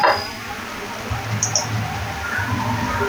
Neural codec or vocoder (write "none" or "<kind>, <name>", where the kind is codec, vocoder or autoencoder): none